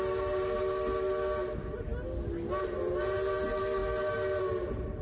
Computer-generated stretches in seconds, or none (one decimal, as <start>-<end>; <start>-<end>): none